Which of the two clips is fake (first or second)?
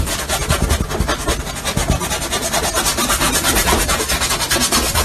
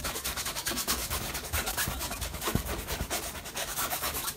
second